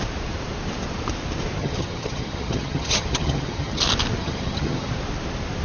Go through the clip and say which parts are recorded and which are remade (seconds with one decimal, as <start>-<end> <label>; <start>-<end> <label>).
0.0-1.6 recorded; 1.6-3.8 remade; 3.8-4.2 recorded; 4.2-4.9 remade; 4.9-5.6 recorded